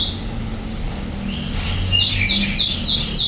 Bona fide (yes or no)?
yes